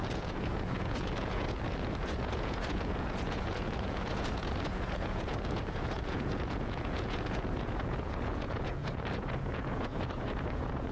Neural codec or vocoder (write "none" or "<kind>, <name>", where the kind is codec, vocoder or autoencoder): vocoder, Vocos